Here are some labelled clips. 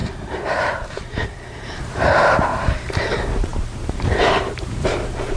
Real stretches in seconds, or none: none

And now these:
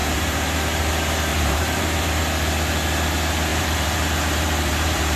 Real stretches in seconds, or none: 0.9-1.3; 2.2-3.5

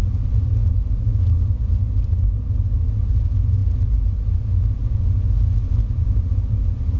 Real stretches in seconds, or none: 0.0-7.0

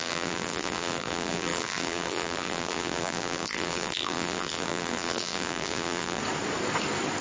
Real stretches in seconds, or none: 6.2-7.2

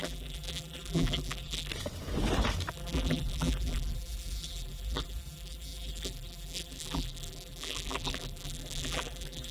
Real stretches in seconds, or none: 1.7-2.7